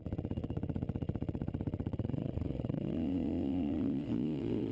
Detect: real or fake fake